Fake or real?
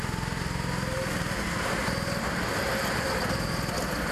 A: real